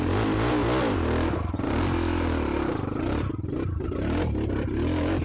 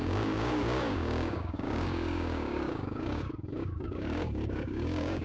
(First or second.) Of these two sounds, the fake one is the second